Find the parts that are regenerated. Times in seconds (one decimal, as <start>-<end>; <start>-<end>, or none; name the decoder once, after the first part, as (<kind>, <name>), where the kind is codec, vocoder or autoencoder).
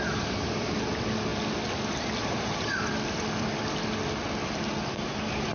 none